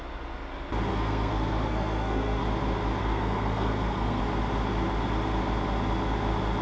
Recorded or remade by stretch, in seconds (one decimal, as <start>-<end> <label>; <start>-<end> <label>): 0.0-0.9 recorded; 0.9-2.4 remade; 2.4-3.0 recorded; 3.0-4.2 remade; 4.2-6.6 recorded